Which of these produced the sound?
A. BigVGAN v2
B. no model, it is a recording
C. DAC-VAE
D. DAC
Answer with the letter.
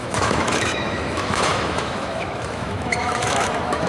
C